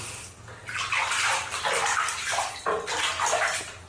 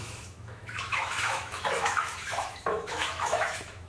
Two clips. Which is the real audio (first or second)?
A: first